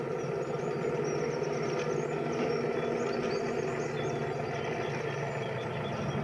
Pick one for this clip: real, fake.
real